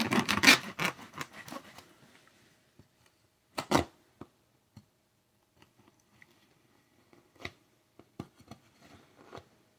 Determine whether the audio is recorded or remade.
remade